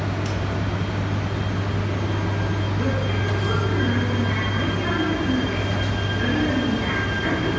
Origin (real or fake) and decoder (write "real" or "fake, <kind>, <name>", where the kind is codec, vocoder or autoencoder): real